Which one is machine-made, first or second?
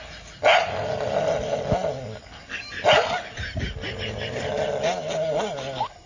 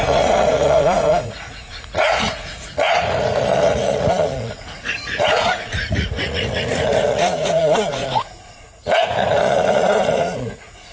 second